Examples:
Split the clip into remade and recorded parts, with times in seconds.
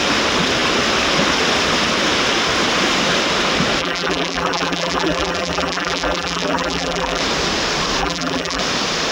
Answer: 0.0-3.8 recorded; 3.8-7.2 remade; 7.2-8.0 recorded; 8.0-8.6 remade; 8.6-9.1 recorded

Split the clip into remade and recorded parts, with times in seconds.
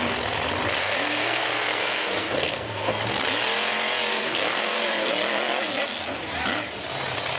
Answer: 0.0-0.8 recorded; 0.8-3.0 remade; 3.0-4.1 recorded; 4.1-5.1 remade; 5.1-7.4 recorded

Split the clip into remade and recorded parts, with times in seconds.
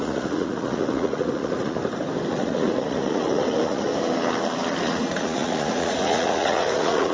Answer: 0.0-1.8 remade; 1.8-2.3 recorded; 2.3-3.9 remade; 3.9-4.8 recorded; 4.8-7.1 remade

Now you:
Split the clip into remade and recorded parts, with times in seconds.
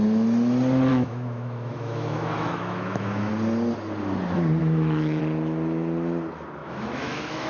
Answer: 0.0-0.9 recorded; 0.9-3.3 remade; 3.3-4.6 recorded; 4.6-5.2 remade; 5.2-6.6 recorded; 6.6-7.5 remade